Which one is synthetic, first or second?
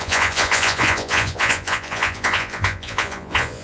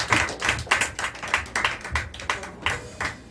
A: first